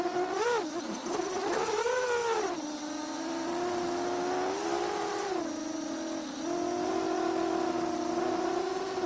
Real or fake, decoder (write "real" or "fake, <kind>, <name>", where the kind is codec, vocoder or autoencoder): real